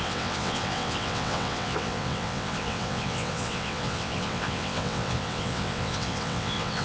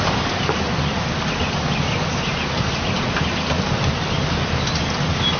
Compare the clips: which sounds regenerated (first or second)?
first